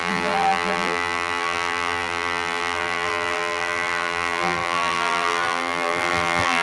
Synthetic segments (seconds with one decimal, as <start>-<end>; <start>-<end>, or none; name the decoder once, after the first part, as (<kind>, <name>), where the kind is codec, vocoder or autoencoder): 0.0-6.6 (vocoder, BigVGAN v2)